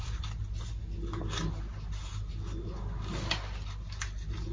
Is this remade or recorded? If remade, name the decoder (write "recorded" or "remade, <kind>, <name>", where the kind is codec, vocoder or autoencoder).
recorded